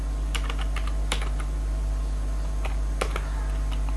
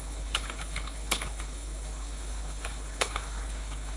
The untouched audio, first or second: first